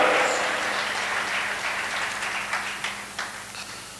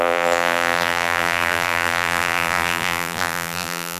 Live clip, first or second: first